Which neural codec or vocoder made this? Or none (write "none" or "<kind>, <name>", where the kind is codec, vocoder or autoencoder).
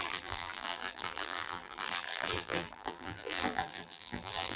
vocoder, BigVGAN v2